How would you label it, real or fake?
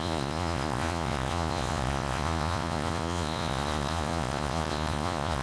fake